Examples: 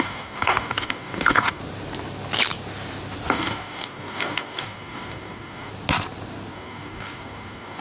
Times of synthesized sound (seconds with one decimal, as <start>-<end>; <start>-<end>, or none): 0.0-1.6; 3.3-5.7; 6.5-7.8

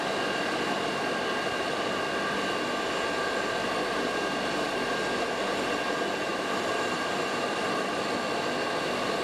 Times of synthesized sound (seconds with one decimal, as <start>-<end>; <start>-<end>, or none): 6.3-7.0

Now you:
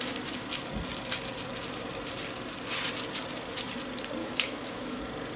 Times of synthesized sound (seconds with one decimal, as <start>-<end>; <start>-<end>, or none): 4.2-5.0

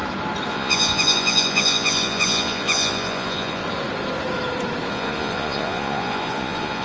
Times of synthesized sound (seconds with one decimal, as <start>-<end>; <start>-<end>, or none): 0.5-3.6; 4.9-6.8